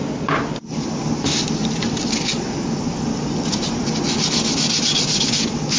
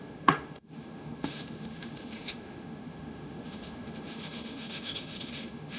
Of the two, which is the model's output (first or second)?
second